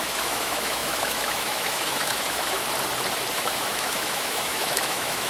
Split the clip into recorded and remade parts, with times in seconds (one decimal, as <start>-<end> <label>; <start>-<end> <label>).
0.0-2.6 remade; 2.6-3.3 recorded; 3.3-5.3 remade